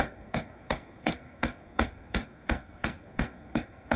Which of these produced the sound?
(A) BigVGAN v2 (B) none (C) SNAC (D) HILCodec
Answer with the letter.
C